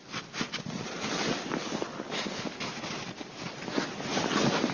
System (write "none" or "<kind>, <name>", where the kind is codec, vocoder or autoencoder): none